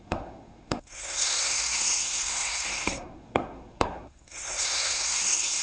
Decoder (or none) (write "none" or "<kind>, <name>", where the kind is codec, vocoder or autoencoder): codec, SNAC